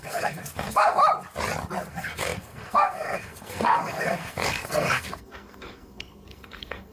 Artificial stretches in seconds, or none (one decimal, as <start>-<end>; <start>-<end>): 0.0-1.0; 1.9-6.9